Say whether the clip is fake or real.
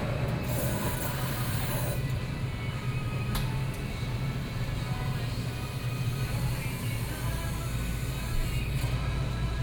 real